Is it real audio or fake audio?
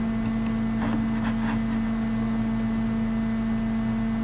real